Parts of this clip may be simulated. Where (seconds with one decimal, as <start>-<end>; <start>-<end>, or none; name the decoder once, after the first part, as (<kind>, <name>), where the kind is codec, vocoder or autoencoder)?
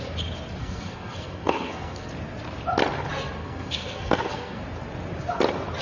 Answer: 0.6-2.1 (codec, SNAC); 3.4-4.6